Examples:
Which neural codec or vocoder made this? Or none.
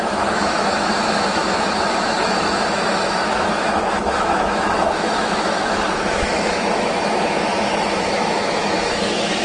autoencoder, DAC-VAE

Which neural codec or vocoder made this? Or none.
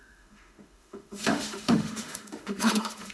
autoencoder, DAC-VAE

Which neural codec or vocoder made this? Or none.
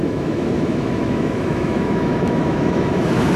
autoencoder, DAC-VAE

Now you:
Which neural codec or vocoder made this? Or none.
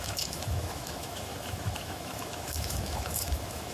autoencoder, DAC-VAE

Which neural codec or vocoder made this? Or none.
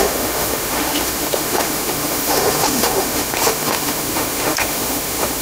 autoencoder, DAC-VAE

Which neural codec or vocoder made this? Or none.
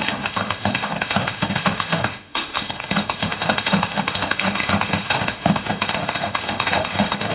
autoencoder, DAC-VAE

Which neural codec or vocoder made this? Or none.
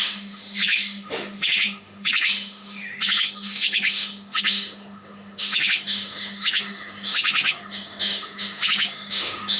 autoencoder, DAC-VAE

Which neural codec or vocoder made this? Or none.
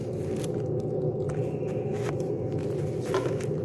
none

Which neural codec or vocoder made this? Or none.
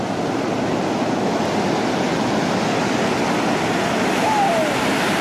none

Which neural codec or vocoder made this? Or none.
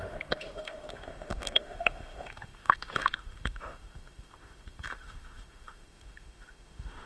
autoencoder, DAC-VAE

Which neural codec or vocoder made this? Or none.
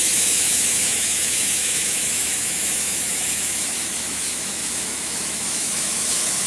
autoencoder, DAC-VAE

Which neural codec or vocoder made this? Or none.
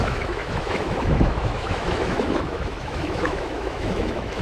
autoencoder, DAC-VAE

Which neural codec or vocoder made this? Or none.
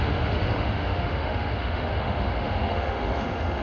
autoencoder, DAC-VAE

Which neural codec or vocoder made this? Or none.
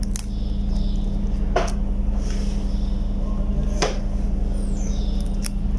none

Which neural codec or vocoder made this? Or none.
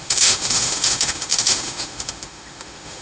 autoencoder, DAC-VAE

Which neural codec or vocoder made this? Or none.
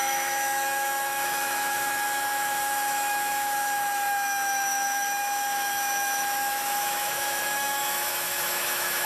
autoencoder, DAC-VAE